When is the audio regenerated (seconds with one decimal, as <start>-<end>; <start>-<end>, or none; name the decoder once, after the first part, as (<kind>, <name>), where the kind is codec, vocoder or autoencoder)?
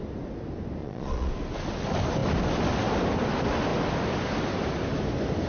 0.8-1.3 (vocoder, Vocos)